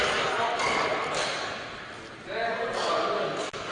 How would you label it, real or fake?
real